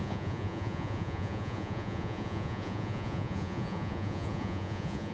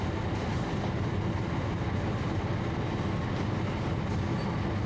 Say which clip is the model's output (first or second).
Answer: first